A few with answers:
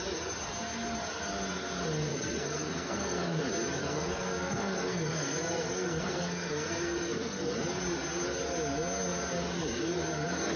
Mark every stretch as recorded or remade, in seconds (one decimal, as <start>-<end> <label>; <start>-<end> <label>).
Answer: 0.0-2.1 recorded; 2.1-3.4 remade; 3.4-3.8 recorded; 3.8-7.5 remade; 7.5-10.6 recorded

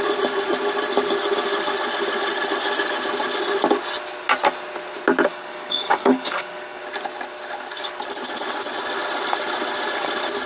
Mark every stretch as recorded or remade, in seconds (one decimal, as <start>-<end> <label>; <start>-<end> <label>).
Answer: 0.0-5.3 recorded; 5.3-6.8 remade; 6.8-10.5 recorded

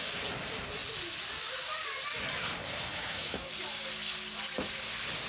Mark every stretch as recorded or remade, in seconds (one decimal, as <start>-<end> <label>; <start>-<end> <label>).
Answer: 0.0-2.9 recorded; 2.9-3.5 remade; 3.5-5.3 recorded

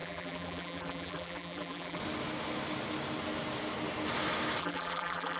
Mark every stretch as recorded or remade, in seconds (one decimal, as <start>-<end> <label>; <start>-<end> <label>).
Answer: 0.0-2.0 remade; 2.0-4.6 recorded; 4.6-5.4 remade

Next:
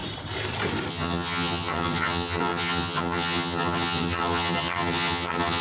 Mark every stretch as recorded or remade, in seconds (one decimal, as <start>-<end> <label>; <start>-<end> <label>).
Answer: 0.0-0.9 recorded; 0.9-5.6 remade